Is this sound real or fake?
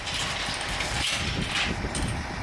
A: real